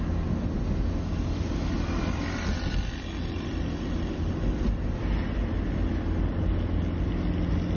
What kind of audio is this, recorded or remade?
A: recorded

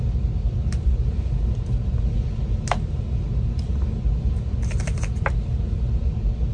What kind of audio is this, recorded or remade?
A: recorded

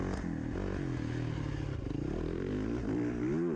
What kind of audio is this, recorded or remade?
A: recorded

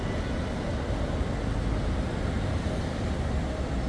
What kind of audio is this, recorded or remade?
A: recorded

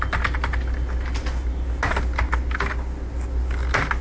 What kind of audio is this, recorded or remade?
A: recorded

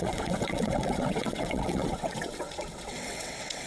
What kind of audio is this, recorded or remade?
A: remade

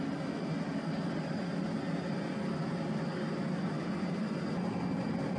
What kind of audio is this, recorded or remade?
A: recorded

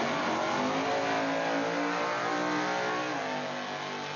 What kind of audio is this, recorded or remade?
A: recorded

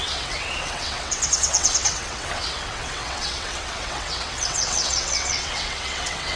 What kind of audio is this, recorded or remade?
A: remade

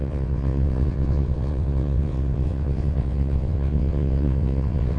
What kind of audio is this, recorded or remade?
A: remade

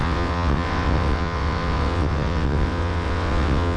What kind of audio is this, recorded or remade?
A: remade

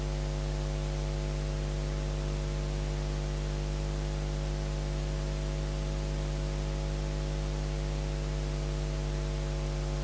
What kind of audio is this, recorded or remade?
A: recorded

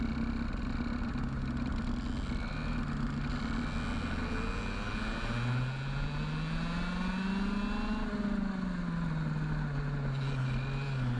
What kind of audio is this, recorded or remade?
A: recorded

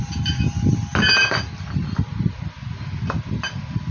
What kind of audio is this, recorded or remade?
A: recorded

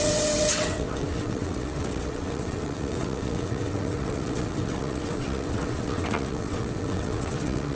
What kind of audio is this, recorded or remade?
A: remade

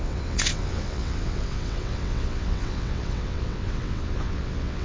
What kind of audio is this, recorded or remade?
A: remade